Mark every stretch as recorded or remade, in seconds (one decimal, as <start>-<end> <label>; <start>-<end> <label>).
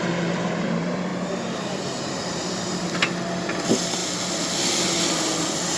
0.0-1.1 remade; 1.1-2.1 recorded; 2.1-5.8 remade